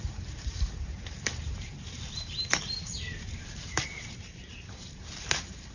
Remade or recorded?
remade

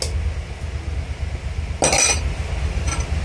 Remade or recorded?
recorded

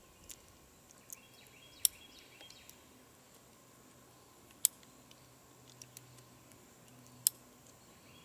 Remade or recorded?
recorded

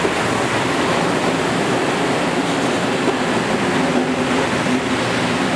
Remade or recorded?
recorded